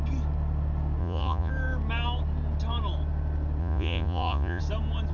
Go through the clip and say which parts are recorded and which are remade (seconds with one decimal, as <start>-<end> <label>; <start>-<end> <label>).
0.0-1.0 recorded; 1.0-1.5 remade; 1.5-3.6 recorded; 3.6-4.6 remade; 4.6-5.1 recorded